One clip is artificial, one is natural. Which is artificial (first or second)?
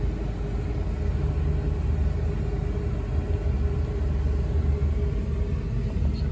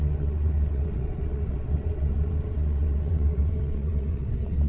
second